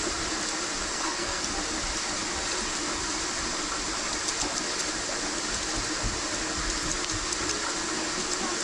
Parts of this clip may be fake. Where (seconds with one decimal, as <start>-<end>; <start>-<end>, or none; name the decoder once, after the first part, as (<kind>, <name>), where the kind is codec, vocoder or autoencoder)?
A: 0.9-1.4 (codec, SNAC)